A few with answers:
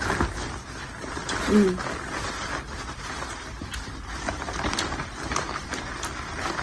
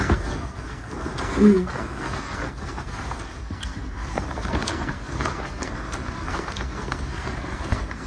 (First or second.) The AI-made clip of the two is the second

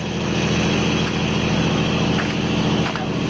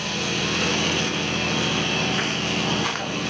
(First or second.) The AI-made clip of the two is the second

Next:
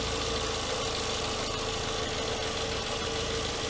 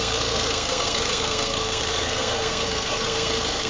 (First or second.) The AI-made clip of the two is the second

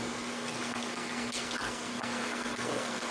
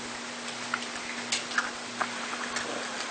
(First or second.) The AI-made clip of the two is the first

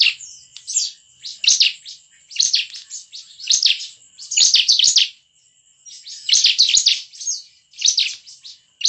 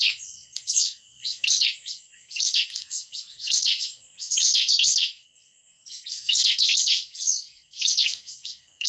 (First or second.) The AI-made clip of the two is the second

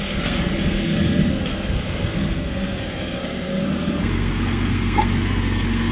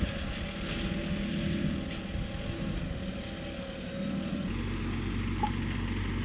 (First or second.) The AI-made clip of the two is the first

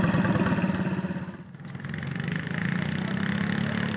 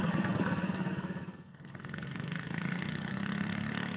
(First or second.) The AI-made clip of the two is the second